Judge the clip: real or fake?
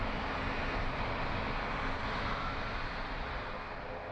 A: real